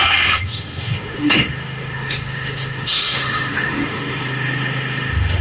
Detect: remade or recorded remade